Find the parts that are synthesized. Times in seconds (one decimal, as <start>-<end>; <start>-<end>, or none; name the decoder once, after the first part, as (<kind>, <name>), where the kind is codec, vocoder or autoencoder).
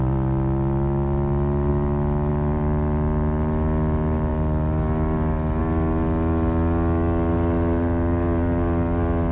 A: none